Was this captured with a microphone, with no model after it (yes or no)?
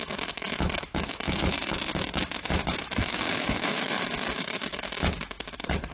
no